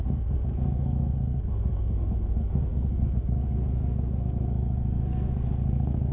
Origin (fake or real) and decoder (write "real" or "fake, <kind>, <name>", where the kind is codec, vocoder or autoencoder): fake, codec, SNAC